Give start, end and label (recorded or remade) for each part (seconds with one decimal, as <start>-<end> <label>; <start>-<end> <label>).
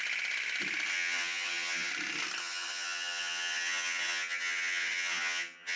0.0-0.9 recorded; 0.9-1.9 remade; 1.9-2.4 recorded; 2.4-5.8 remade